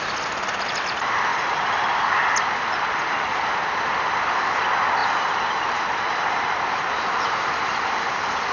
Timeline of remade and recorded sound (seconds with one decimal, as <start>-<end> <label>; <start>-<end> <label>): 0.0-8.5 recorded